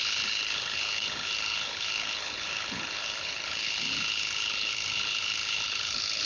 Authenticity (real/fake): fake